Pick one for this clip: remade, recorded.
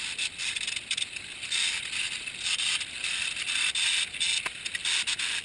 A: recorded